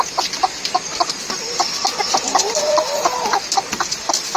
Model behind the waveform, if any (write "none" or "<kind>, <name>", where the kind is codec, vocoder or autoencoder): none